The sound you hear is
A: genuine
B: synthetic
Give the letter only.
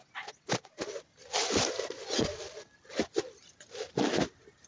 A